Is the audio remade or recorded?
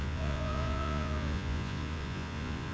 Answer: remade